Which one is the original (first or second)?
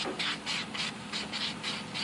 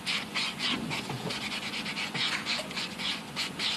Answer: first